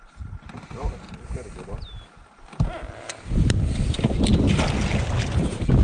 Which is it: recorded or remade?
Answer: recorded